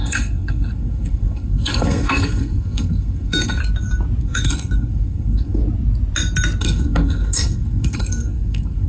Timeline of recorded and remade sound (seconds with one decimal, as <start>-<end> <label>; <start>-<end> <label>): 0.0-3.6 remade; 3.6-4.2 recorded; 4.2-5.6 remade; 5.6-6.6 recorded; 6.6-8.9 remade